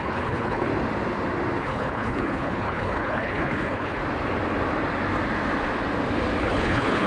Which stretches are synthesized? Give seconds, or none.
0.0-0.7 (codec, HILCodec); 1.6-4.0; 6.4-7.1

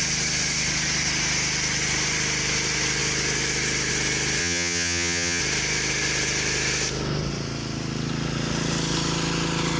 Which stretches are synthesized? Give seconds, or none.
4.4-5.4 (vocoder, HiFi-GAN)

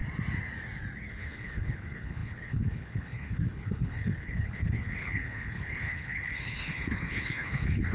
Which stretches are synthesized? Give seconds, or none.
1.1-7.9 (codec, HILCodec)

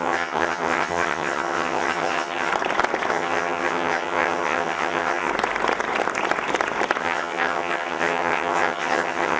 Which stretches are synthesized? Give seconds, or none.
0.0-2.5 (vocoder, HiFi-GAN); 3.1-5.3; 7.0-9.4

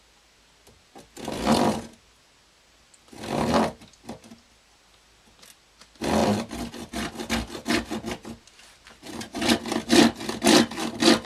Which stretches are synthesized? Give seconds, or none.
none